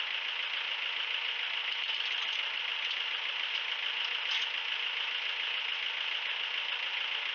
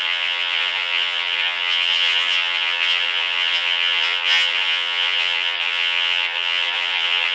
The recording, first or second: first